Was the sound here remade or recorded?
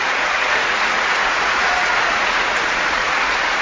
remade